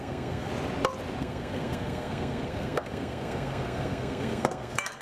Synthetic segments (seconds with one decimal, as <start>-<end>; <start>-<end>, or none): 0.0-0.5; 1.2-5.0